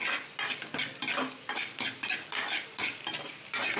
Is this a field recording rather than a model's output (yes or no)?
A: no